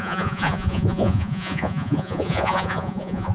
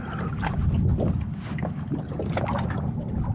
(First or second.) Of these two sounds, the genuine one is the second